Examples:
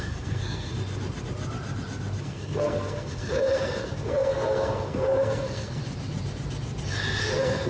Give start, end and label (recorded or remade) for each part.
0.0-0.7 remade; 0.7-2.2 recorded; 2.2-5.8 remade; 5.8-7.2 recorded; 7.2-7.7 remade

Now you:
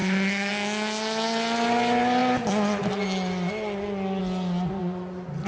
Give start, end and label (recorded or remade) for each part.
0.0-0.5 remade; 0.5-5.5 recorded

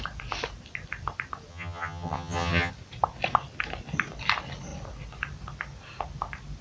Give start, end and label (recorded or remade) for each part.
0.0-1.5 recorded; 1.5-2.7 remade; 2.7-6.6 recorded

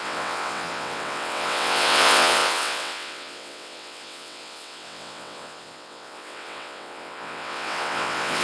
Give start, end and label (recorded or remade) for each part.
0.0-8.4 remade